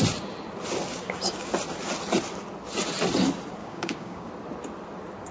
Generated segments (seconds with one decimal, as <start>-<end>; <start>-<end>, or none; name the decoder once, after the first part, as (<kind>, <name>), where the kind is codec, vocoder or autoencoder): 0.9-1.5 (codec, DAC); 3.6-4.3